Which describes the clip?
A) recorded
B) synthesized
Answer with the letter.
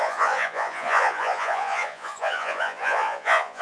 B